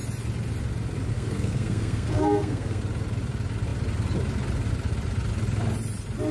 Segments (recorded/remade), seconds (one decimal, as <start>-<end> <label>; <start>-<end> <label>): 0.0-1.1 recorded; 1.1-2.8 remade; 2.8-6.3 recorded